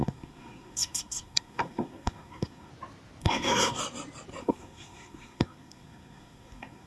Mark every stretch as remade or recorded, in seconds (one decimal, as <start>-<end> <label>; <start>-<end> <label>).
0.0-2.7 remade; 2.7-3.2 recorded; 3.2-3.8 remade; 3.8-4.4 recorded; 4.4-6.9 remade